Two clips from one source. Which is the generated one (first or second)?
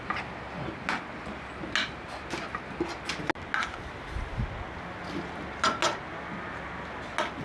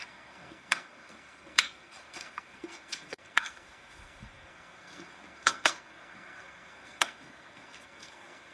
second